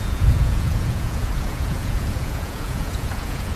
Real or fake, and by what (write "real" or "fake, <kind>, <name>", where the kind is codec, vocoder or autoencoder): fake, vocoder, Vocos